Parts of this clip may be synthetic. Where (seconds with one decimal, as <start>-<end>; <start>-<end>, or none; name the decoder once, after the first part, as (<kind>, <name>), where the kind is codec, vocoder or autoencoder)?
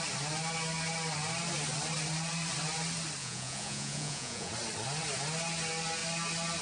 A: 3.2-4.5 (vocoder, Vocos)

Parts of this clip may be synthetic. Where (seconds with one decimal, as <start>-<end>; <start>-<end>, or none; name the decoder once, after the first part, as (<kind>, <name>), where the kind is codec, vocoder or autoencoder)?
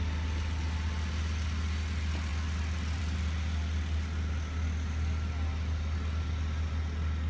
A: none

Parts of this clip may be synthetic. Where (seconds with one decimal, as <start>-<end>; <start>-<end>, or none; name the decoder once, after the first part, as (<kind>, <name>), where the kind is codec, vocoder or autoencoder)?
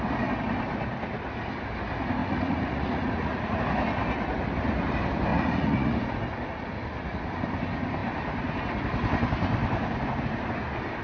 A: 2.2-3.6 (vocoder, Vocos); 5.3-6.2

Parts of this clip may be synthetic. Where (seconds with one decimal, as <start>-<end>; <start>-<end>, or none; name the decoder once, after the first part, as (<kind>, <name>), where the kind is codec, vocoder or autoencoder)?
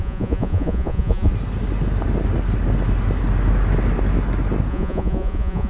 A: 0.0-1.3 (vocoder, Vocos); 4.7-5.7